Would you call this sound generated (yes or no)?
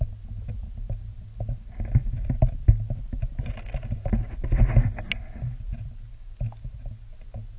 no